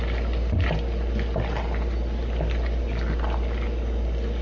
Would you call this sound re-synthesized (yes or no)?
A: no